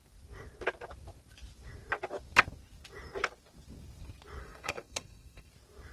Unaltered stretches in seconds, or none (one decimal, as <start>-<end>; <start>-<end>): 0.0-4.4; 5.5-5.9